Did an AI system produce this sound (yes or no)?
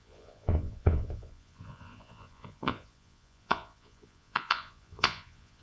yes